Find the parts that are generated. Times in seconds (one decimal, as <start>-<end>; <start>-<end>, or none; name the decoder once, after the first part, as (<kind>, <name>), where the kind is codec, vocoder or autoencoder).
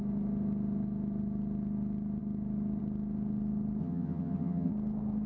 3.8-4.7 (vocoder, HiFi-GAN)